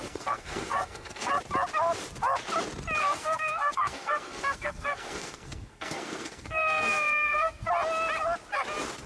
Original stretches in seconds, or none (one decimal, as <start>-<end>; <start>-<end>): 1.3-3.0; 7.7-9.1